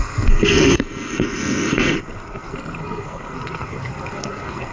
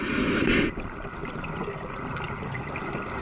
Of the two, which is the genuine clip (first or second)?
second